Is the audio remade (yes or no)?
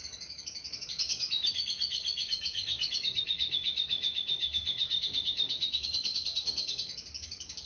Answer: yes